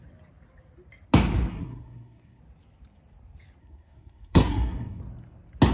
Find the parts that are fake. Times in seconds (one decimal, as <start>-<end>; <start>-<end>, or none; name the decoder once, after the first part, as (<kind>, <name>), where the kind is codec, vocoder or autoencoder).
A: 1.5-2.4 (codec, SNAC); 3.6-5.0